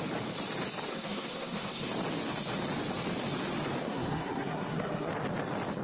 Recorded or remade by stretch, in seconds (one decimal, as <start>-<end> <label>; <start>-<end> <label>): 0.0-0.9 recorded; 0.9-1.9 remade; 1.9-3.8 recorded; 3.8-5.1 remade; 5.1-5.8 recorded